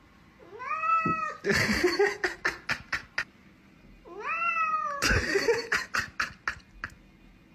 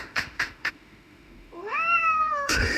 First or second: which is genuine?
first